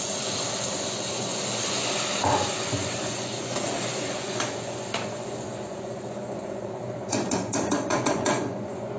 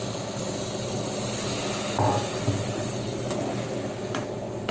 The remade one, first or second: first